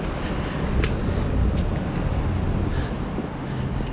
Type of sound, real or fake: real